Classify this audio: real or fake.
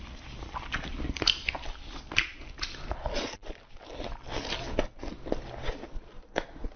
real